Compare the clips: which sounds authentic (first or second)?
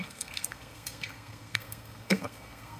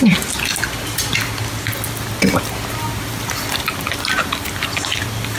second